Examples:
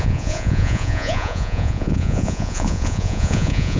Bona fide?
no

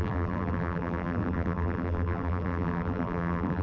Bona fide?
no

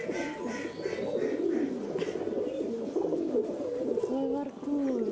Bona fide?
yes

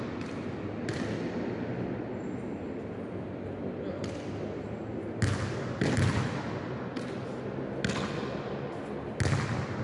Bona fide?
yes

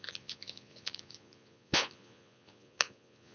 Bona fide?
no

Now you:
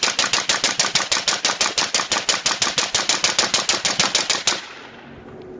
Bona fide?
yes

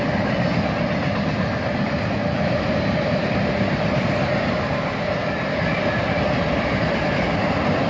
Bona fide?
yes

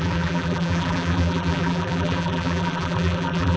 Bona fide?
no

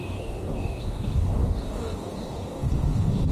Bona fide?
no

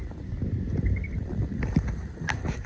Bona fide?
yes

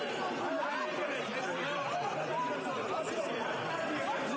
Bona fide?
yes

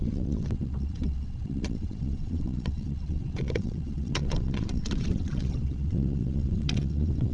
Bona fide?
no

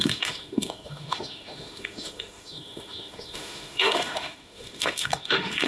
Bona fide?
no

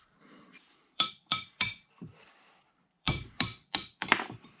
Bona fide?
no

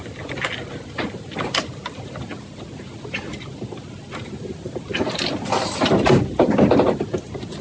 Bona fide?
yes